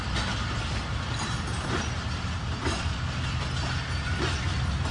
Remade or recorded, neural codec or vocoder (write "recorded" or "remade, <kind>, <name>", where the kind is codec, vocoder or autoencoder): recorded